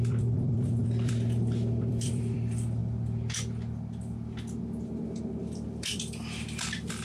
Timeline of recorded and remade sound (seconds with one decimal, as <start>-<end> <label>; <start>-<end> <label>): 0.0-2.8 remade; 2.8-5.2 recorded; 5.2-7.0 remade